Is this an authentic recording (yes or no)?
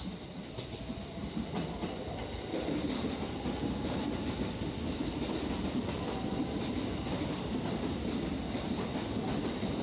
yes